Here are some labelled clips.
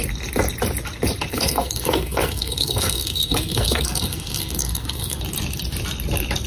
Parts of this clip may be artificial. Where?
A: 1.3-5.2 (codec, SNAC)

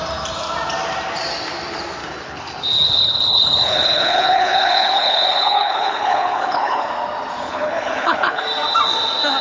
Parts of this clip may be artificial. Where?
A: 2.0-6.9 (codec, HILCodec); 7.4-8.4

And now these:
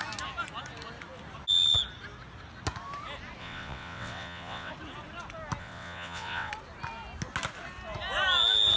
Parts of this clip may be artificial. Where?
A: 3.4-4.7 (vocoder, WaveNeXt); 5.6-6.5

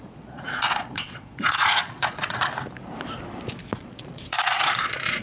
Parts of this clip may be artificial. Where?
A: 0.0-2.5 (vocoder, Vocos); 3.6-5.2